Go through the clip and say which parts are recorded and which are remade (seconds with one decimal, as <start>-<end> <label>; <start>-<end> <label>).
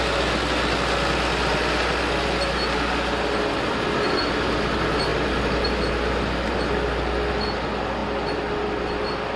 0.0-9.4 recorded